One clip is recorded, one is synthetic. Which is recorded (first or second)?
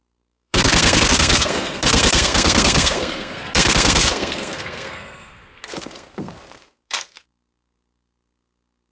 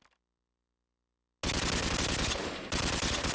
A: second